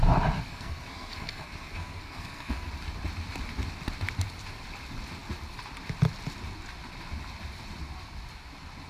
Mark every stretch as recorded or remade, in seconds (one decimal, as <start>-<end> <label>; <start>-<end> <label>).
0.0-0.5 recorded; 0.5-2.7 remade; 2.7-8.9 recorded